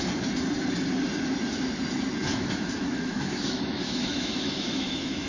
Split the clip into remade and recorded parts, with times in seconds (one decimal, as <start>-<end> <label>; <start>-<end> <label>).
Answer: 0.0-2.3 recorded; 2.3-5.3 remade